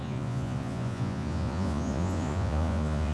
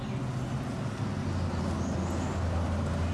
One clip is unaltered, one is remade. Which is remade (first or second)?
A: first